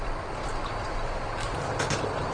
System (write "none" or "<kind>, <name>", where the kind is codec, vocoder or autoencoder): none